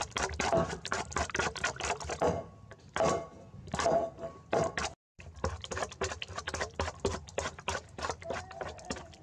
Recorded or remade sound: remade